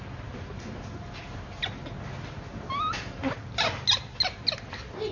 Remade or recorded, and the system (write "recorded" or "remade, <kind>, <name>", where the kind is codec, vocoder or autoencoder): recorded